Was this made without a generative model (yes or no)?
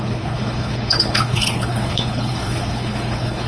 no